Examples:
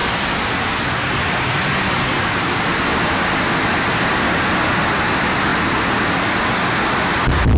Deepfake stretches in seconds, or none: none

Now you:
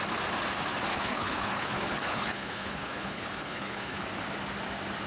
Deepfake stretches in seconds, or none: 0.9-4.0